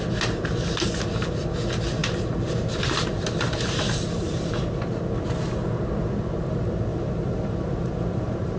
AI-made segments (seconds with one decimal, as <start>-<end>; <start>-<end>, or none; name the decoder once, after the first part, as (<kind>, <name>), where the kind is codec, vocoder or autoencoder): 2.0-4.6 (vocoder, BigVGAN v2); 6.9-8.6